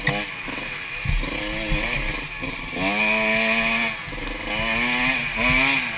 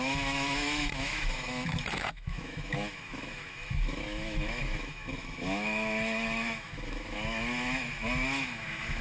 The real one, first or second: first